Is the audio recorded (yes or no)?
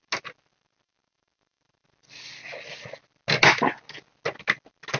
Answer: yes